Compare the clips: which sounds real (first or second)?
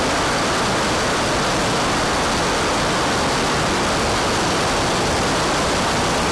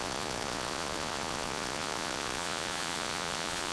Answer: first